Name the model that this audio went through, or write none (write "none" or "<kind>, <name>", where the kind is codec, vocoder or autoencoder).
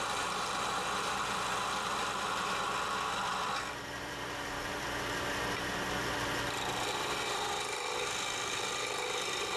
vocoder, BigVGAN v2